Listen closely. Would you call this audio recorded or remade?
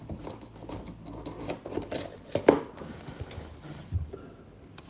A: recorded